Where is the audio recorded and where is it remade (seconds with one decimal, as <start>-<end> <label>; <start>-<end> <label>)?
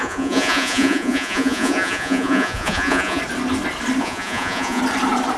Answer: 0.0-3.2 remade; 3.2-4.0 recorded; 4.0-4.8 remade; 4.8-5.4 recorded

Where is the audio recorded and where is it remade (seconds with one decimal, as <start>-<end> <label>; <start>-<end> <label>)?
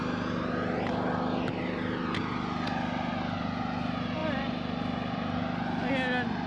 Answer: 0.0-6.5 recorded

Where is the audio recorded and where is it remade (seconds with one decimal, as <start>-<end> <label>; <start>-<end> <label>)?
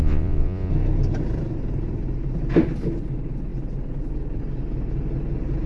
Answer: 0.0-0.7 remade; 0.7-5.7 recorded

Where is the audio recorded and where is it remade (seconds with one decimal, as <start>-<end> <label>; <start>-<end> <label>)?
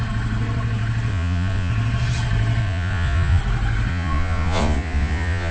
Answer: 0.0-1.1 recorded; 1.1-1.7 remade; 1.7-2.6 recorded; 2.6-3.4 remade; 3.4-3.9 recorded; 3.9-5.5 remade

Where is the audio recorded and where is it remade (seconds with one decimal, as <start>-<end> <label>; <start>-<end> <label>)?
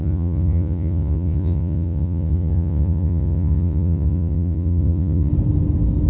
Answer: 0.0-5.3 remade; 5.3-6.1 recorded